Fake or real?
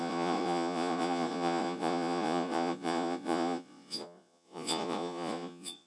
fake